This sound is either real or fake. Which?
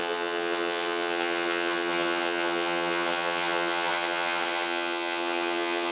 fake